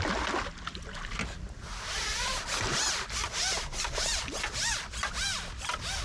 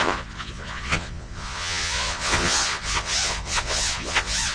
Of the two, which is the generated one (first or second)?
second